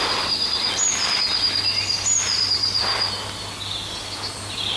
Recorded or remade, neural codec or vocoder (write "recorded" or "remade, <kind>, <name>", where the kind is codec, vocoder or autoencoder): recorded